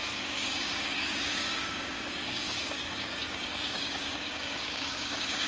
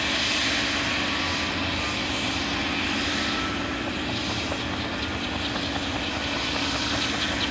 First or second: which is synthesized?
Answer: first